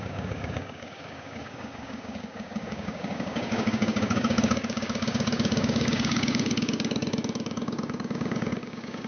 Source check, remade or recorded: remade